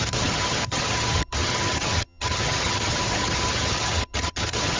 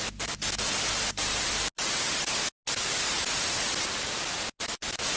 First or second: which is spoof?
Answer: first